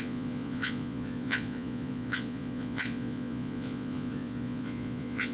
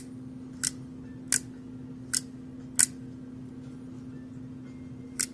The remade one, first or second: first